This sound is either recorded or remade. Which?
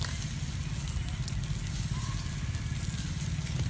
recorded